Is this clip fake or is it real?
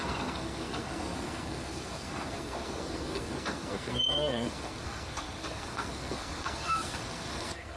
fake